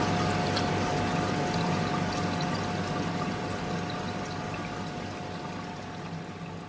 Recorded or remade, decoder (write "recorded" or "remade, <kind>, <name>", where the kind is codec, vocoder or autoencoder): recorded